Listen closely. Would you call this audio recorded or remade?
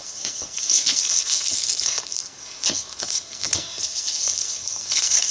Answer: remade